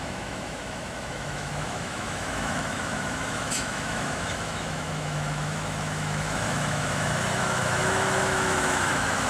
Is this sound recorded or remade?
remade